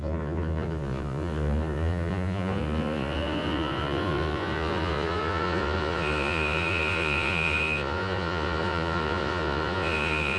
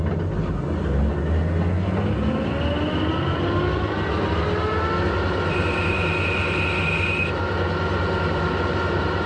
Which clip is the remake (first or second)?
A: first